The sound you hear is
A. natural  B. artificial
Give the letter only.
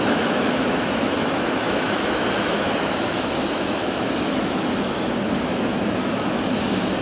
B